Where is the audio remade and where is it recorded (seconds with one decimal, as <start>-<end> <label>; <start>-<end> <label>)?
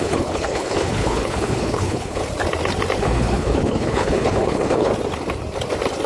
0.0-2.2 remade; 2.2-3.0 recorded; 3.0-4.9 remade; 4.9-6.1 recorded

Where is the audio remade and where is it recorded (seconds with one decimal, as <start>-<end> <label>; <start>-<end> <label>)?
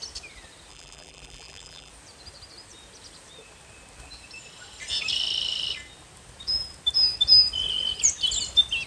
0.0-0.7 recorded; 0.7-1.9 remade; 1.9-8.9 recorded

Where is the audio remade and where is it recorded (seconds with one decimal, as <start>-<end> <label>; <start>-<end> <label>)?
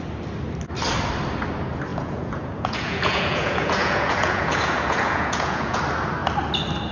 0.0-1.9 recorded; 1.9-5.8 remade; 5.8-6.9 recorded